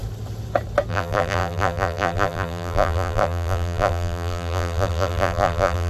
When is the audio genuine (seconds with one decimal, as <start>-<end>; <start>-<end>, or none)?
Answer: 0.0-0.9